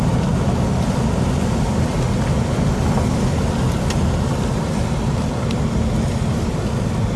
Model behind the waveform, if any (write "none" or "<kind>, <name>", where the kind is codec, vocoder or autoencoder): none